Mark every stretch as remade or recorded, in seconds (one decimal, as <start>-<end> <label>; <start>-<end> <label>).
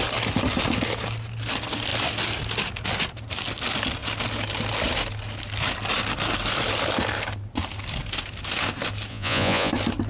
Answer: 0.0-9.1 recorded; 9.1-9.7 remade; 9.7-10.1 recorded